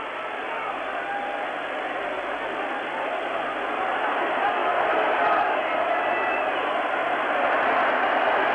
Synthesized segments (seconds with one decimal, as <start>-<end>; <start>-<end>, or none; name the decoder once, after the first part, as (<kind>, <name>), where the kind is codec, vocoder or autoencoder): none